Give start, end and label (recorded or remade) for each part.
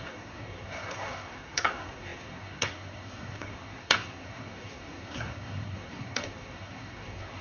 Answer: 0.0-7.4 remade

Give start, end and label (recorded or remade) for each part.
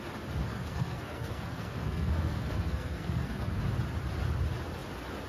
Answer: 0.0-0.4 recorded; 0.4-3.6 remade; 3.6-5.3 recorded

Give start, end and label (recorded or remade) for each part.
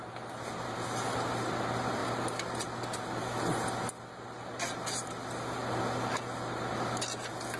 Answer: 0.0-7.6 recorded